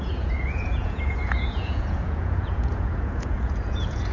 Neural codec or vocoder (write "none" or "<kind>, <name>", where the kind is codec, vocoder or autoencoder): vocoder, Vocos